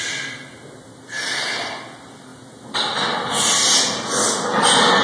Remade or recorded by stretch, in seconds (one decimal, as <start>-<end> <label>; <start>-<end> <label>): 0.0-5.0 recorded